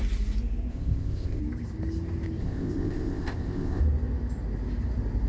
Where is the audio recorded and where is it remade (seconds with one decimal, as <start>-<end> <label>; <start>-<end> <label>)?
0.0-0.7 recorded; 0.7-1.4 remade; 1.4-2.4 recorded; 2.4-3.8 remade; 3.8-5.3 recorded